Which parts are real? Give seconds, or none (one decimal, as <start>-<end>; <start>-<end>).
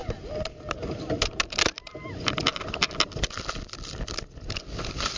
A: 0.0-5.2